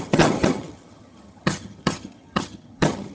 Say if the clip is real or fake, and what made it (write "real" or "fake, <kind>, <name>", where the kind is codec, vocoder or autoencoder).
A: fake, vocoder, HiFi-GAN